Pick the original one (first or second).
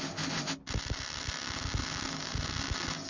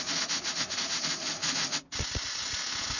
first